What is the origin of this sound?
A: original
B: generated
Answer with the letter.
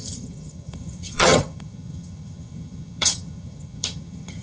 B